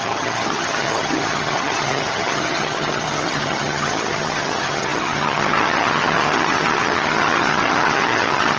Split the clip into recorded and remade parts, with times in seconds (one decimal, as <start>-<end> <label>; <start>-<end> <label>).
0.0-8.6 remade